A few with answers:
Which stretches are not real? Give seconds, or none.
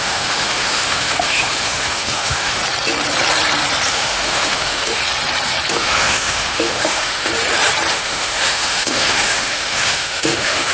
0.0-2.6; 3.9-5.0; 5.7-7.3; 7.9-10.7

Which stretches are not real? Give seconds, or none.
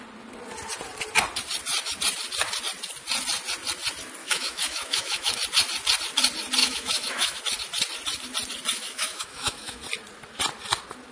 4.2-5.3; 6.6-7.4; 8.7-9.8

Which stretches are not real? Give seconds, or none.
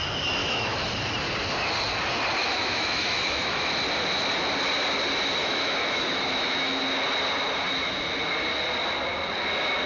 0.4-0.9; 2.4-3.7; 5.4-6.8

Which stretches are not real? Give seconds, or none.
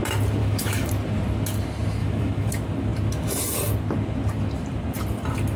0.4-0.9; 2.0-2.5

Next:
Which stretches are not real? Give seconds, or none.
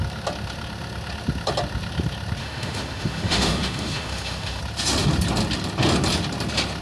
2.4-4.6